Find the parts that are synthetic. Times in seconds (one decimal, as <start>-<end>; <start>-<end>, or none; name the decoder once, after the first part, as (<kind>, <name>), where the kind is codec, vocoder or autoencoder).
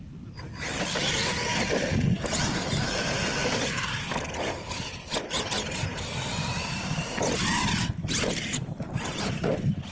none